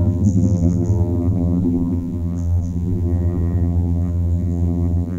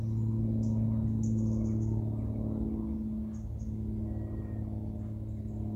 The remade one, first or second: first